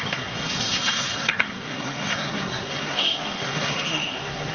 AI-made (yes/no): yes